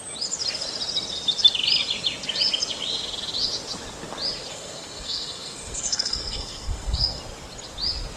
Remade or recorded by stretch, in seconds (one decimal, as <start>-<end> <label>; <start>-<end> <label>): 0.0-4.5 recorded; 4.5-7.2 remade; 7.2-8.2 recorded